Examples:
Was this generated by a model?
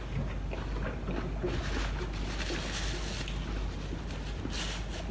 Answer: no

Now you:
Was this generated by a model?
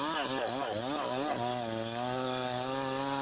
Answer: no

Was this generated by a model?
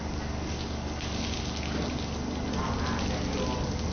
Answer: no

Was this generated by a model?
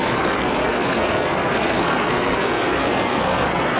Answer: yes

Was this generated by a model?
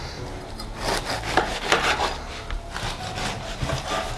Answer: no